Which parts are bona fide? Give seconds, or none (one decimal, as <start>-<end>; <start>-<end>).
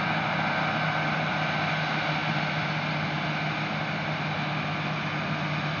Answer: 0.0-5.8